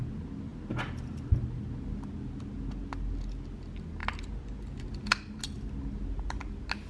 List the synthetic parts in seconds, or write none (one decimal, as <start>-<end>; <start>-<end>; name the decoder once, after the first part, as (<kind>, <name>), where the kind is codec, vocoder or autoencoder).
none